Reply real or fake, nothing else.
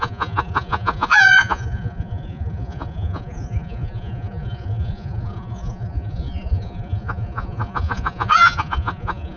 fake